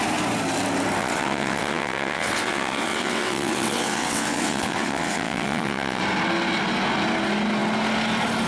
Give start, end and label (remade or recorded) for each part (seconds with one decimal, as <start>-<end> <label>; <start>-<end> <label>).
0.0-1.0 recorded; 1.0-6.0 remade; 6.0-8.5 recorded